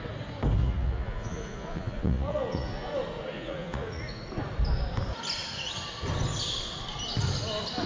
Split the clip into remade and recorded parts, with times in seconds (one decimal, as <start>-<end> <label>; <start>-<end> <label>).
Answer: 0.0-0.6 recorded; 0.6-2.9 remade; 2.9-3.3 recorded; 3.3-4.2 remade; 4.2-7.9 recorded